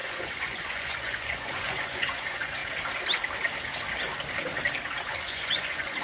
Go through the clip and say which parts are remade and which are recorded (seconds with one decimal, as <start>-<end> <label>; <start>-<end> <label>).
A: 0.0-2.6 remade; 2.6-5.1 recorded; 5.1-6.0 remade